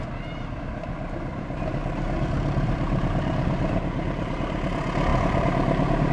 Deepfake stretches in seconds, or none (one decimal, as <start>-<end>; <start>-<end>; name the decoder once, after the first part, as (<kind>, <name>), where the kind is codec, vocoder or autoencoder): 1.3-4.4 (vocoder, BigVGAN v2); 5.1-6.1